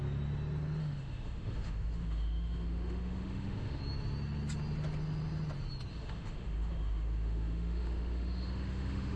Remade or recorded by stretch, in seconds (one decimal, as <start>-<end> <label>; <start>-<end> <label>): 0.0-0.8 recorded; 0.8-3.8 remade; 3.8-5.9 recorded; 5.9-9.2 remade